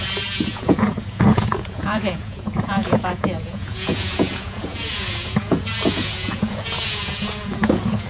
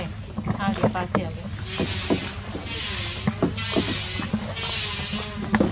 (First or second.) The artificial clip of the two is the first